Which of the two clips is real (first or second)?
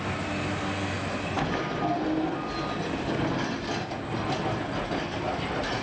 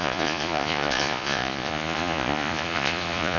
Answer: first